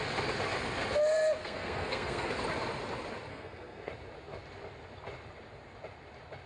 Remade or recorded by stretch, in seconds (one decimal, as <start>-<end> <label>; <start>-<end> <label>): 0.0-1.4 recorded; 1.4-2.3 remade; 2.3-3.3 recorded; 3.3-3.9 remade; 3.9-6.5 recorded